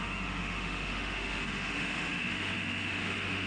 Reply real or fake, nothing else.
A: fake